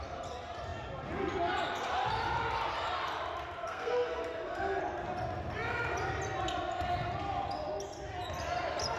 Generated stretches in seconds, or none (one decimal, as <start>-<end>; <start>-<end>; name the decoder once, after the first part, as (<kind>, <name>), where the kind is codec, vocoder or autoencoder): 3.6-4.8 (codec, SNAC)